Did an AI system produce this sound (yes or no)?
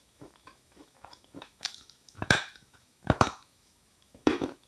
yes